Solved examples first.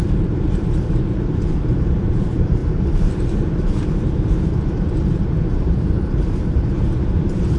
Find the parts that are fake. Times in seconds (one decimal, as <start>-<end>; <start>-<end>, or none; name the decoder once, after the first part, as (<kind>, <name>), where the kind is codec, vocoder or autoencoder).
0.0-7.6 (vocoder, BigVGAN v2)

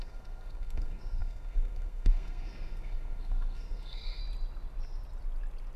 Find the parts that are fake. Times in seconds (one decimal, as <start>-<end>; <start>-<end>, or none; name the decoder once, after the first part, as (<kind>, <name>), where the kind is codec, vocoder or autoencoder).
0.0-4.2 (codec, SNAC)

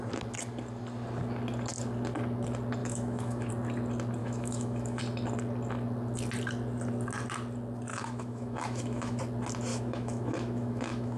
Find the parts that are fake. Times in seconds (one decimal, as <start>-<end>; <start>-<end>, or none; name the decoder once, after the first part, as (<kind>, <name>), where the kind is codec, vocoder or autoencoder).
2.8-3.5 (autoencoder, DAC-VAE); 4.2-5.0; 7.9-9.2; 9.7-11.2